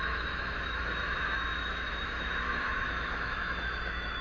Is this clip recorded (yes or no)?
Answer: no